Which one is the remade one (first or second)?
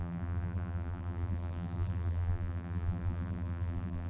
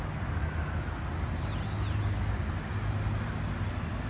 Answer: first